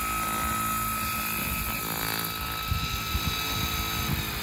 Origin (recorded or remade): recorded